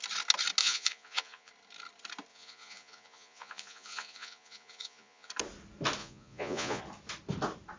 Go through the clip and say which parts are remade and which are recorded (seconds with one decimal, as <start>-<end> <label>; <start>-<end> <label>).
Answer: 0.0-0.6 recorded; 0.6-1.5 remade; 1.5-2.3 recorded; 2.3-5.3 remade; 5.3-6.0 recorded; 6.0-6.8 remade; 6.8-7.8 recorded